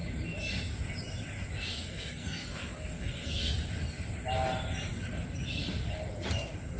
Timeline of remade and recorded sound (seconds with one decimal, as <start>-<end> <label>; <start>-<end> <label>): 0.0-1.7 recorded; 1.7-3.5 remade; 3.5-6.8 recorded

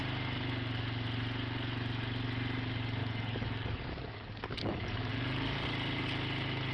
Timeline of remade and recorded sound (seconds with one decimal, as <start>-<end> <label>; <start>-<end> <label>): 0.0-3.0 recorded; 3.0-5.7 remade; 5.7-6.7 recorded

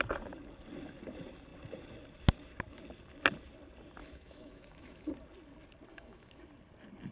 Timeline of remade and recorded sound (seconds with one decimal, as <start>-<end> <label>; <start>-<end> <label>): 0.0-4.0 recorded; 4.0-5.1 remade; 5.1-5.9 recorded; 5.9-6.4 remade; 6.4-7.1 recorded